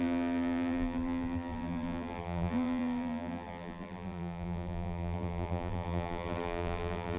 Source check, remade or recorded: remade